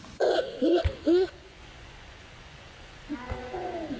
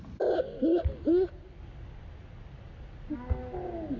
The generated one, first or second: first